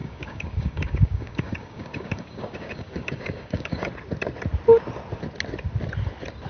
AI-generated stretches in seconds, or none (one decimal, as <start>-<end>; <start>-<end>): 0.0-3.9